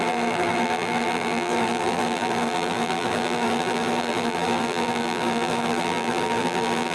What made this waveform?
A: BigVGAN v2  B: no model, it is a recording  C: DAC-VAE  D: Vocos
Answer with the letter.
A